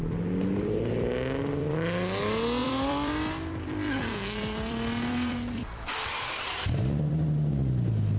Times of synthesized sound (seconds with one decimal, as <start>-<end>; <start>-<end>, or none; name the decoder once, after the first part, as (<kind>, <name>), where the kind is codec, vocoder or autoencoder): 1.4-2.2 (vocoder, BigVGAN v2); 2.6-7.5